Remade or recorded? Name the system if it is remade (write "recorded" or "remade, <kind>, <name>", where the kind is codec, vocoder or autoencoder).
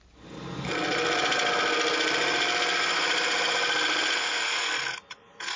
recorded